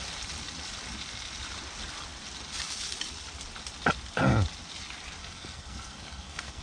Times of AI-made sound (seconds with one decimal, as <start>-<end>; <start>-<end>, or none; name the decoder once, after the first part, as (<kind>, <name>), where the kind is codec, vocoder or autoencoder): 5.2-6.6 (codec, SNAC)